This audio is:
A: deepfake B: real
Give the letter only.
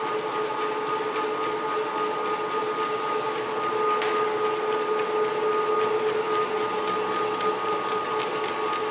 B